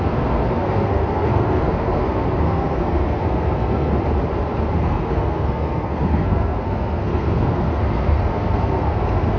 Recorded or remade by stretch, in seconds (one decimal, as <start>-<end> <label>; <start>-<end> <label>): 0.0-3.9 remade; 3.9-4.8 recorded; 4.8-9.4 remade